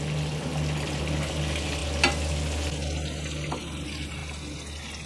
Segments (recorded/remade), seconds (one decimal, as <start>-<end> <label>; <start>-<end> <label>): 0.0-5.1 recorded